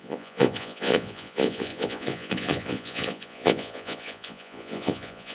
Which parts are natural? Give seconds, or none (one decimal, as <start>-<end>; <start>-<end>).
none